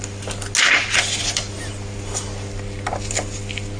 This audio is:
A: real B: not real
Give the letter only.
A